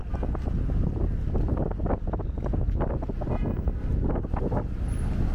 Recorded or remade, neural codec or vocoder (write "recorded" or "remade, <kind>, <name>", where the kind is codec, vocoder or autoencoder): recorded